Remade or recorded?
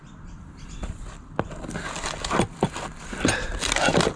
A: recorded